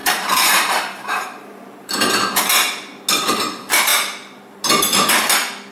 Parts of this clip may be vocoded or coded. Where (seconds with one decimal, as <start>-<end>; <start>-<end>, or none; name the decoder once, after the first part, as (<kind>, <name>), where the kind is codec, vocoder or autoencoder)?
0.0-1.9 (vocoder, BigVGAN v2)